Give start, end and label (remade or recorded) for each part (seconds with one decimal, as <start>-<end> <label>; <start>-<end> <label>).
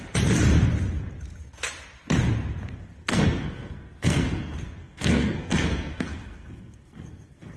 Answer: 0.0-3.0 recorded; 3.0-7.6 remade